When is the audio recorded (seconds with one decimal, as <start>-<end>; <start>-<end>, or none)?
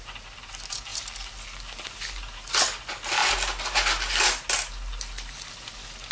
0.0-6.1